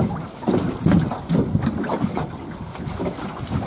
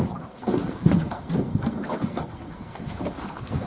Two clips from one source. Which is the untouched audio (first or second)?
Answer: first